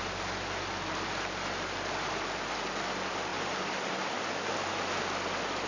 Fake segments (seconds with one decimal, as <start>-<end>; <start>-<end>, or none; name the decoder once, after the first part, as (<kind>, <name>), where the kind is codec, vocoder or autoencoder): none